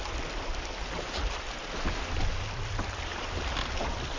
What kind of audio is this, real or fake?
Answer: real